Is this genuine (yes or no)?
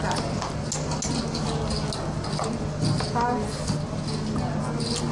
yes